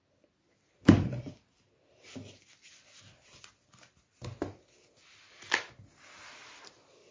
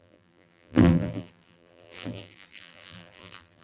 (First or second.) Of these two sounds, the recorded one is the first